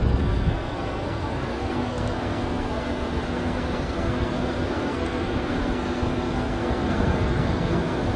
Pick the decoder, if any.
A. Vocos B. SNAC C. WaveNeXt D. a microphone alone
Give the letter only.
B